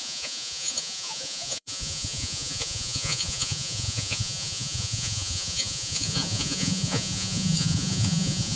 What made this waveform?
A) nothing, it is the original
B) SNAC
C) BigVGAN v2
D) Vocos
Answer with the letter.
D